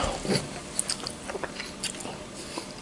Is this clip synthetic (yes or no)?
no